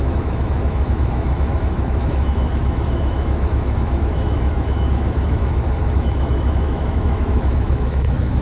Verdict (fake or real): fake